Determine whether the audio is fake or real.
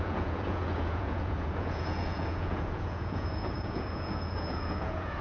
fake